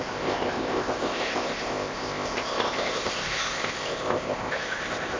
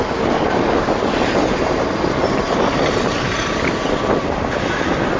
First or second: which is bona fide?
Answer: second